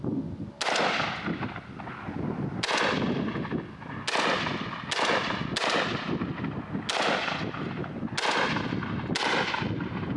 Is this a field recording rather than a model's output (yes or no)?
yes